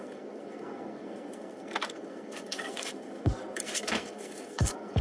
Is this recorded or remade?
remade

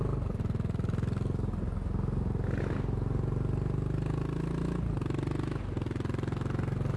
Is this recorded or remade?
recorded